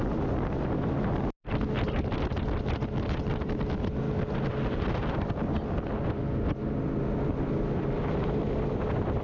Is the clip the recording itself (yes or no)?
yes